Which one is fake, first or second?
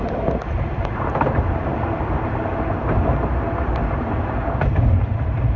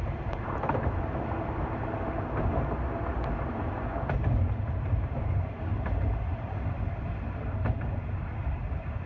first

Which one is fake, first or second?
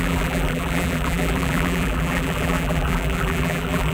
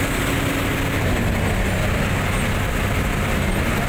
first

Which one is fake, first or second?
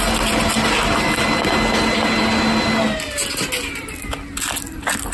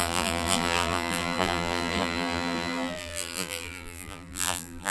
second